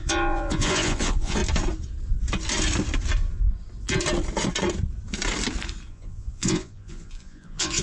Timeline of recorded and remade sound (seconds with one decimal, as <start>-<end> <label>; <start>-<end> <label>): 0.0-1.4 remade; 1.4-5.9 recorded; 5.9-7.8 remade